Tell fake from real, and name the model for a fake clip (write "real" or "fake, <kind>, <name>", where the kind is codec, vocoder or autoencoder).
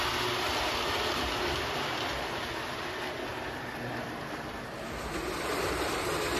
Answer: real